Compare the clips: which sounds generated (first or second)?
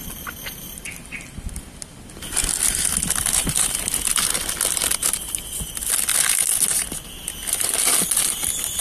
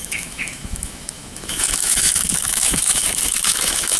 second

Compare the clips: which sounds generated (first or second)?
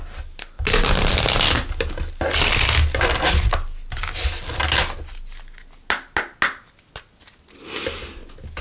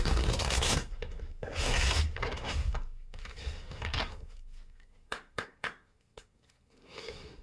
second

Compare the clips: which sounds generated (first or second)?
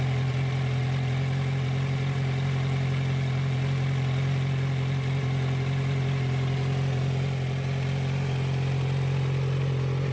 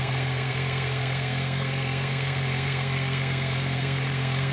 second